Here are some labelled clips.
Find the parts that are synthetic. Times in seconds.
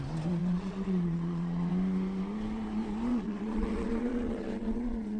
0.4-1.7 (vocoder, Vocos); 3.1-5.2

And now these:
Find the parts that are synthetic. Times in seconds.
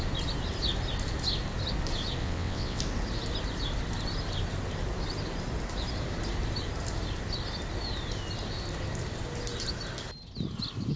2.2-2.8 (vocoder, WaveNeXt)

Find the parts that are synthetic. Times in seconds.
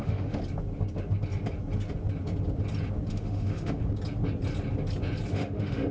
0.0-0.4 (autoencoder, DAC-VAE); 3.1-3.8; 5.3-5.9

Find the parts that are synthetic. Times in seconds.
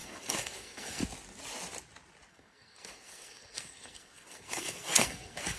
0.0-1.0 (codec, SNAC); 2.3-5.6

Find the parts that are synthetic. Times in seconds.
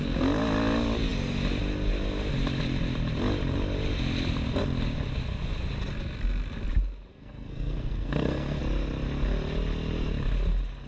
7.1-8.6 (codec, SNAC)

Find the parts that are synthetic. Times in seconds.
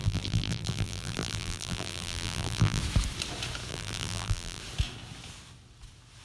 0.0-2.8 (vocoder, BigVGAN v2); 3.7-4.6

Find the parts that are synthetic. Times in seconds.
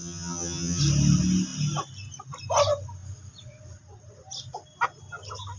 0.0-0.8 (vocoder, HiFi-GAN)